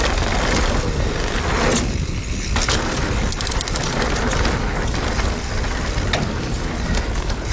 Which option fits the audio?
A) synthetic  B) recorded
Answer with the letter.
B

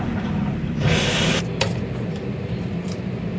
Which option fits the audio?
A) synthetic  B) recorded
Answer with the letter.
B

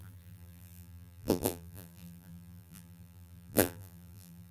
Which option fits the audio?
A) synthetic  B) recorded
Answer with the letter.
A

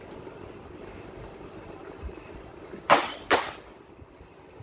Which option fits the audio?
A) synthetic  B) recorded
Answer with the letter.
B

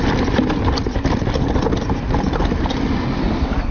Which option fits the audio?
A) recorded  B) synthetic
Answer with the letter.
A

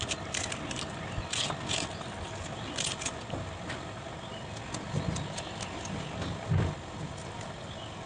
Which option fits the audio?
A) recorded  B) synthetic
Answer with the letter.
A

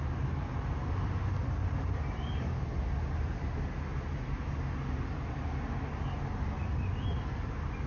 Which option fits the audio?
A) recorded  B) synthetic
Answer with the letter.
A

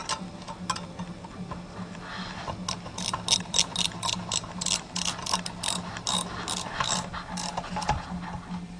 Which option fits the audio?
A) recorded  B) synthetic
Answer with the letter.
A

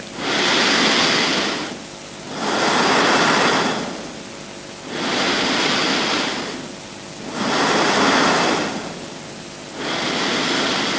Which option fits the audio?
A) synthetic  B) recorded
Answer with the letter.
B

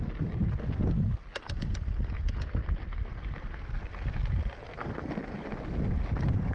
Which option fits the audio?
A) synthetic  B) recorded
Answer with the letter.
B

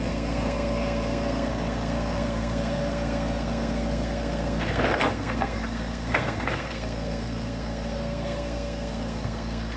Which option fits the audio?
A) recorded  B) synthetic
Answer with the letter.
B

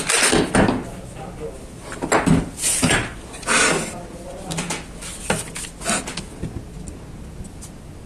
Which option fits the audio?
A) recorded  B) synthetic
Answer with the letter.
A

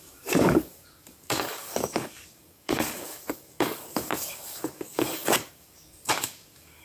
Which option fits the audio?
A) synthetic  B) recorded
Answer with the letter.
A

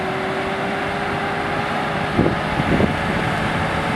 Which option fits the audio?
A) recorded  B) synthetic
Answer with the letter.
A